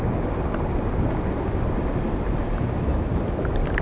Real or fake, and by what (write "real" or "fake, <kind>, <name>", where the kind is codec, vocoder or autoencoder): real